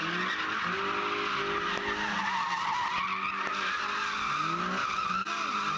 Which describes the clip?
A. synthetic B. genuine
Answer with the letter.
B